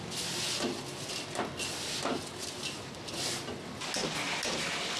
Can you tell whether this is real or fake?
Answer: real